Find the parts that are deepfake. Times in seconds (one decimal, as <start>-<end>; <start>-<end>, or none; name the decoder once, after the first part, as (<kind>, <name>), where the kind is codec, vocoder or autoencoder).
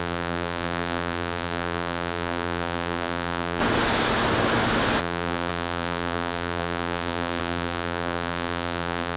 0.0-3.6 (vocoder, BigVGAN v2); 5.0-9.2